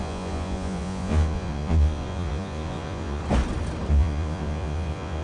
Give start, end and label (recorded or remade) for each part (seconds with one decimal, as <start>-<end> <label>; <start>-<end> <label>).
0.0-3.2 remade; 3.2-3.9 recorded; 3.9-5.2 remade

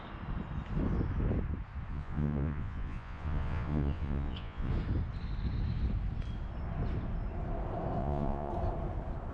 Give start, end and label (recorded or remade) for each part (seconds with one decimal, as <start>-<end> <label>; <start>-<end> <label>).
0.0-1.9 recorded; 1.9-4.7 remade; 4.7-8.0 recorded; 8.0-8.5 remade; 8.5-9.3 recorded

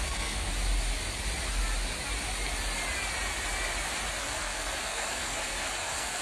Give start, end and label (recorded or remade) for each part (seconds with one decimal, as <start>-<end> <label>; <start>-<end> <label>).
0.0-0.5 remade; 0.5-4.2 recorded; 4.2-6.2 remade

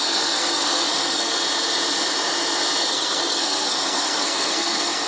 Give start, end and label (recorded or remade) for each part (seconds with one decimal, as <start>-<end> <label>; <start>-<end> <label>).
0.0-1.3 remade; 1.3-2.9 recorded; 2.9-5.1 remade

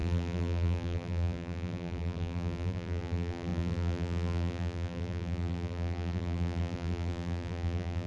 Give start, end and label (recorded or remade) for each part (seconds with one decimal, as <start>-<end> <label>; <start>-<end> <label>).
0.0-8.1 remade

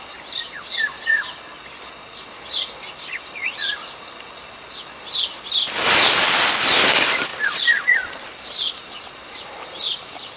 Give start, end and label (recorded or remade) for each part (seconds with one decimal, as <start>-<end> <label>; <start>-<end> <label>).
0.0-1.4 remade; 1.4-6.6 recorded; 6.6-10.4 remade

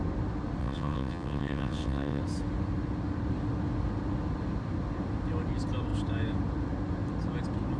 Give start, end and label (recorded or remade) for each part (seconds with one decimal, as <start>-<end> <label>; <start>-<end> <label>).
0.0-0.6 recorded; 0.6-2.2 remade; 2.2-7.8 recorded

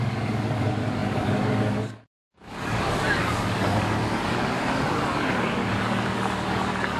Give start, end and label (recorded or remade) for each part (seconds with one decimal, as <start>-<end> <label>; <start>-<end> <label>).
0.0-7.0 remade